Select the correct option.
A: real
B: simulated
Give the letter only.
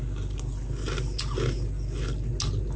A